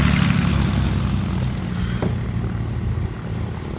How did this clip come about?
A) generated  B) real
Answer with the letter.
B